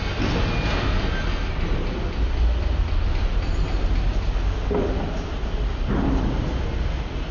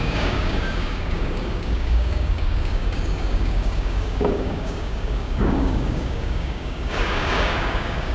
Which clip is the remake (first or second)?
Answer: second